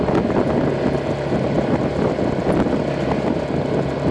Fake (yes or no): no